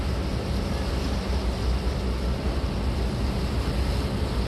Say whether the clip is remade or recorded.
recorded